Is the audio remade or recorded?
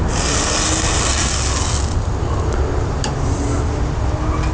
recorded